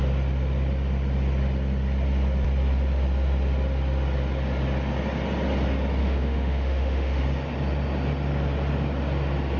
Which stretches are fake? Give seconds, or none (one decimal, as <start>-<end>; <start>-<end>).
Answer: 6.0-7.2